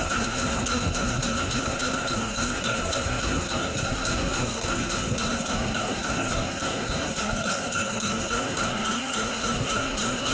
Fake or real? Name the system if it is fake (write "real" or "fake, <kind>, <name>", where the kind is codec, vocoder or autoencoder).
fake, codec, SNAC